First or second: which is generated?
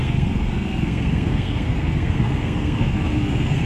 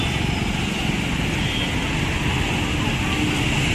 first